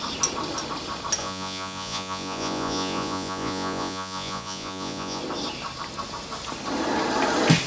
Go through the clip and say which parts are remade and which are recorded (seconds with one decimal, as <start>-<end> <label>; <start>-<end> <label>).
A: 0.0-1.2 recorded; 1.2-5.2 remade; 5.2-7.7 recorded